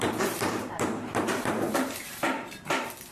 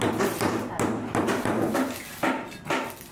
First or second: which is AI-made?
first